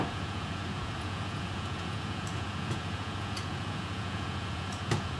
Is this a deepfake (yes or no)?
yes